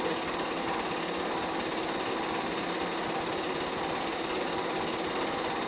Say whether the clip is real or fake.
real